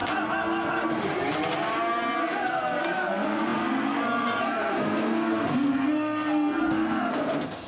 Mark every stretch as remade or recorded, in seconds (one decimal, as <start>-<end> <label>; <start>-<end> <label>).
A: 0.0-2.8 recorded; 2.8-7.7 remade